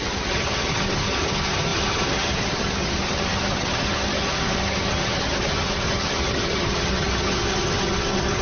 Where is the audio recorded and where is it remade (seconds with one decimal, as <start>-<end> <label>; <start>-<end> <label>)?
0.0-8.4 remade